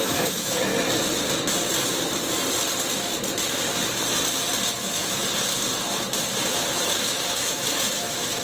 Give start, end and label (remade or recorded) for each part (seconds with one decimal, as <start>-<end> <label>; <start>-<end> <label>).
0.0-0.7 remade; 0.7-4.7 recorded; 4.7-5.2 remade; 5.2-6.5 recorded; 6.5-8.4 remade